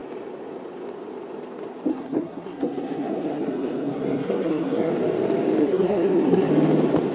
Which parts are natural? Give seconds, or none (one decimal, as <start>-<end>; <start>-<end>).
0.0-1.9; 4.9-5.6; 6.5-7.1